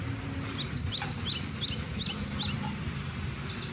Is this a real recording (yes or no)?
yes